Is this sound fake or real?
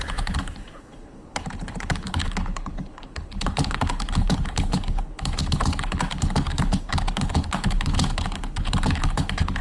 fake